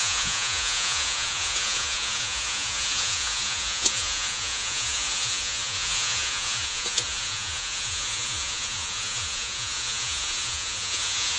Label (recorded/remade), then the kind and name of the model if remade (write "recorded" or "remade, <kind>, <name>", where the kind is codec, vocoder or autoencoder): remade, vocoder, Vocos